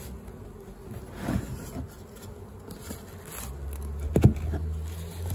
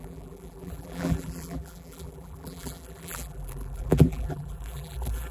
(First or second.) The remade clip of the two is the second